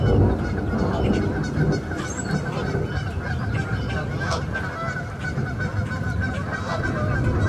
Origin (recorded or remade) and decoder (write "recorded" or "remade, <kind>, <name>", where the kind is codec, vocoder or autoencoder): recorded